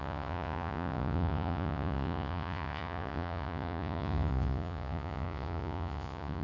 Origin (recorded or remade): remade